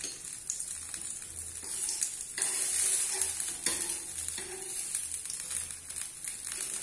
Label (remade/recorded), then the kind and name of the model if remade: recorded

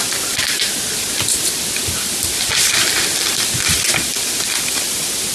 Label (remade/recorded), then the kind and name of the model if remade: recorded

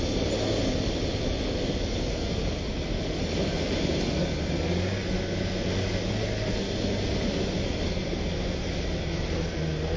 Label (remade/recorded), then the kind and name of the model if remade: recorded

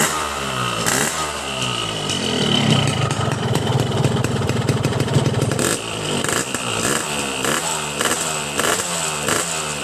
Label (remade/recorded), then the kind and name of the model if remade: remade, vocoder, BigVGAN v2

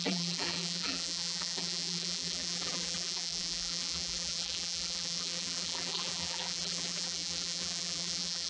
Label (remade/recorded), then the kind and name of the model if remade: remade, vocoder, BigVGAN v2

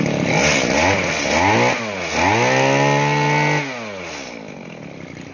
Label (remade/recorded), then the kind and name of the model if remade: recorded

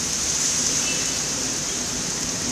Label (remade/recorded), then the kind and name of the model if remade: remade, vocoder, BigVGAN v2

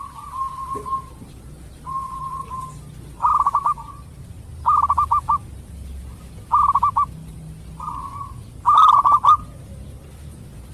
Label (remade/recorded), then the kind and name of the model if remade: recorded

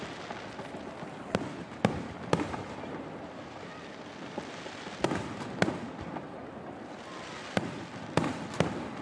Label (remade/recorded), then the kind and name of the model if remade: remade, vocoder, BigVGAN v2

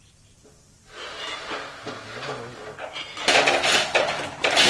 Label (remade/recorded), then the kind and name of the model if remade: recorded